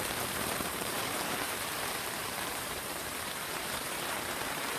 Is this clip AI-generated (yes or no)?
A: yes